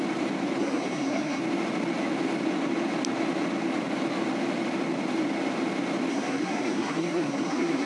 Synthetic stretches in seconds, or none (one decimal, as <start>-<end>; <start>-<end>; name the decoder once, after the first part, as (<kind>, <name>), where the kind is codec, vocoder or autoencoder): 0.6-1.4 (codec, SNAC); 6.1-7.9